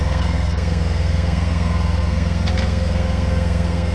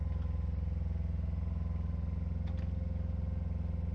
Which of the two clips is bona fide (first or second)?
second